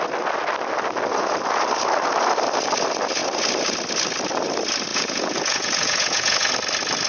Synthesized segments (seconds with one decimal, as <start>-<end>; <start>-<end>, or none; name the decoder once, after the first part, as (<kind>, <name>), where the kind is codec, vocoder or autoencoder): 4.9-6.5 (vocoder, Vocos)